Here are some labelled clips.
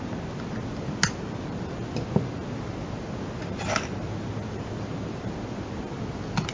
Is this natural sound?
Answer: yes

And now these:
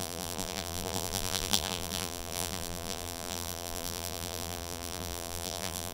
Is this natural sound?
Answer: no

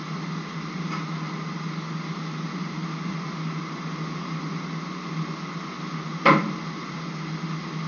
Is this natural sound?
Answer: yes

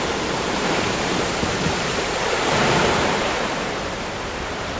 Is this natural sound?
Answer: no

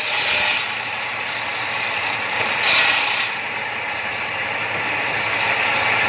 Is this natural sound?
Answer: no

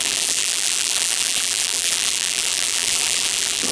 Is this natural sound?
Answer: no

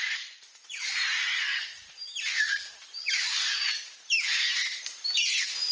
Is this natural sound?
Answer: no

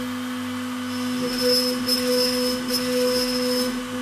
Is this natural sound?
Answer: yes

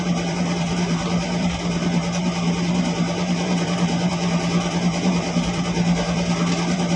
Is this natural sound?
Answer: no